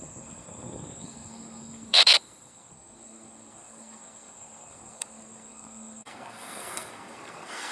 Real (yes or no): no